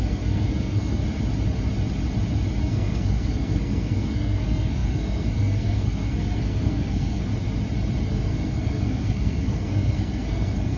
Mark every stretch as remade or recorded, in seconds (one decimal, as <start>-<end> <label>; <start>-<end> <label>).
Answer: 0.0-1.0 remade; 1.0-2.6 recorded; 2.6-7.3 remade; 7.3-8.1 recorded; 8.1-10.8 remade